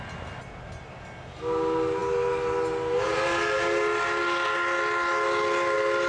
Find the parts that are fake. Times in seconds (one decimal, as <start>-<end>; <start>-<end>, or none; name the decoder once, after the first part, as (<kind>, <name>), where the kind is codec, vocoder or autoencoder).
none